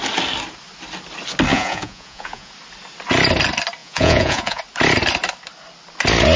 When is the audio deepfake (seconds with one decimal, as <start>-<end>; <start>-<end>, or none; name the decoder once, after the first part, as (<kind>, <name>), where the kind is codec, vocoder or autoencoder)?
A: 1.5-2.5 (vocoder, Vocos); 3.8-4.6